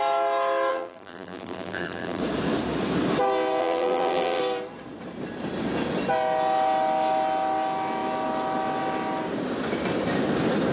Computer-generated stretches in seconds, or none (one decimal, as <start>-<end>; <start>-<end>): 0.7-2.2; 3.6-4.4